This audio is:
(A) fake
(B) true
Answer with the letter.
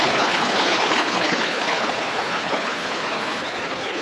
A